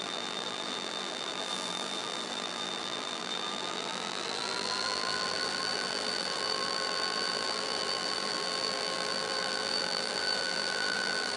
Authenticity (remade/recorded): remade